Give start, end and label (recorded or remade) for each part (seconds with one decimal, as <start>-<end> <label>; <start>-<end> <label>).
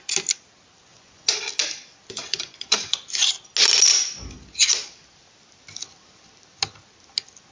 0.0-0.9 recorded; 0.9-1.4 remade; 1.4-2.2 recorded; 2.2-3.0 remade; 3.0-7.5 recorded